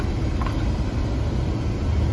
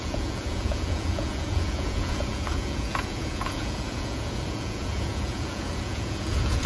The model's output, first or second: second